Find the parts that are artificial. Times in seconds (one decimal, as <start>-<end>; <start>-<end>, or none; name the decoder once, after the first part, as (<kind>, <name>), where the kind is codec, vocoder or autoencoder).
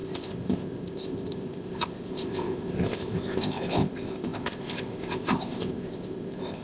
0.0-6.6 (codec, ZipCodec)